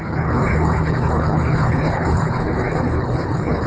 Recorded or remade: remade